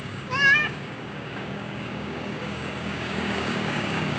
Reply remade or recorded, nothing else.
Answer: remade